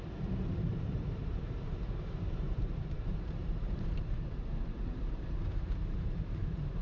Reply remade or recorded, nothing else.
remade